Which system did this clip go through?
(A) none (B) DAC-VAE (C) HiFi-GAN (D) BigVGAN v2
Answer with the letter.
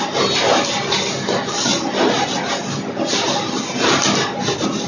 A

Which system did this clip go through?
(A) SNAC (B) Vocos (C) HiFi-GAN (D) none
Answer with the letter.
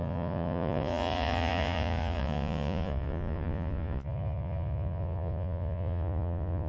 B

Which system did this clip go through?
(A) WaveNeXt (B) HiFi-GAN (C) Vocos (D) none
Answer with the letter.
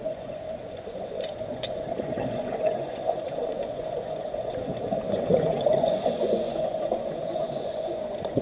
C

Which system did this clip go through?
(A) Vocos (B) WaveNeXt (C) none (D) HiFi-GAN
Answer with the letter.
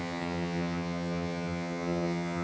D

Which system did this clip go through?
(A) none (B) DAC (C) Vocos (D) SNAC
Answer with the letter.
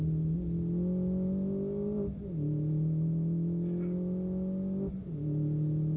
A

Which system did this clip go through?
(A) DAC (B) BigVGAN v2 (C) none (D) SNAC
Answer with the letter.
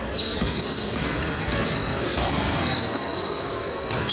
D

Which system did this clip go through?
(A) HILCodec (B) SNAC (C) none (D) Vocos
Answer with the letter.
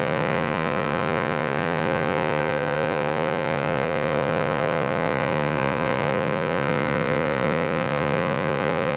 D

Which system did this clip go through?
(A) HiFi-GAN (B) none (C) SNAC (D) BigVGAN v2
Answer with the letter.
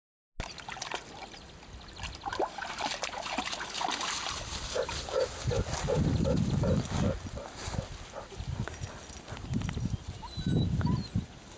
B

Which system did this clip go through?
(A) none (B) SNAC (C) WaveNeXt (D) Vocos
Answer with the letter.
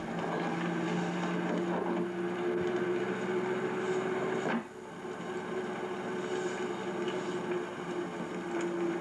A